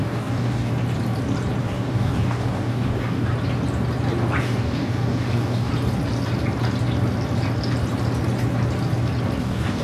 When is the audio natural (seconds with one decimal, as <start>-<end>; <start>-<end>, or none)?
0.7-1.6; 3.3-4.4; 5.7-9.4